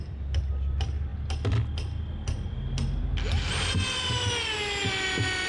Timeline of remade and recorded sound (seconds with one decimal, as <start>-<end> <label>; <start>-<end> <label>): 0.0-5.5 recorded